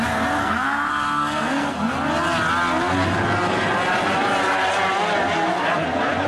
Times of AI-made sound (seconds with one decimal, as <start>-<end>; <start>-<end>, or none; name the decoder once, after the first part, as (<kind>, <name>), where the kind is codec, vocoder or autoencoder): 0.4-1.9 (codec, SNAC)